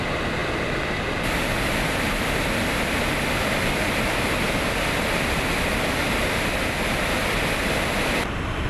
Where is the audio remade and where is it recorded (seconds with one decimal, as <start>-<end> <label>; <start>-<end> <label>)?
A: 0.0-8.7 recorded

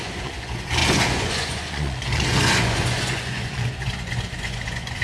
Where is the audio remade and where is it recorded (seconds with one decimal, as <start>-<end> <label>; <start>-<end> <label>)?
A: 0.0-5.0 remade

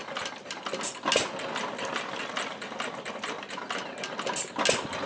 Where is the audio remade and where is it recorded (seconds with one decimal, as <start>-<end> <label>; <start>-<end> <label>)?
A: 0.0-5.1 recorded

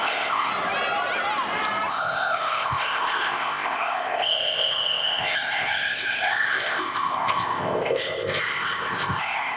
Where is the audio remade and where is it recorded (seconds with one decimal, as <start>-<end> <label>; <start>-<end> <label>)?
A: 0.0-0.5 remade; 0.5-1.9 recorded; 1.9-9.6 remade

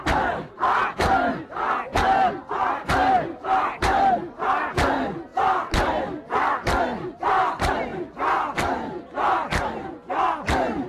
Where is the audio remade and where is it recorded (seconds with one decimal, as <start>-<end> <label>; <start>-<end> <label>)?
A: 0.0-10.9 recorded

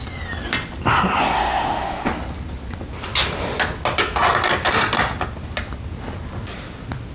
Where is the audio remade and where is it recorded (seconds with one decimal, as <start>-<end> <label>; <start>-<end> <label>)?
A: 0.0-1.2 recorded; 1.2-2.1 remade; 2.1-7.1 recorded